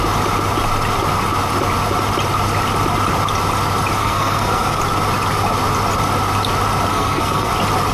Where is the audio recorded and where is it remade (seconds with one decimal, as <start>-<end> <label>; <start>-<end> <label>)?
0.0-4.0 recorded; 4.0-4.8 remade; 4.8-6.9 recorded; 6.9-7.5 remade; 7.5-7.9 recorded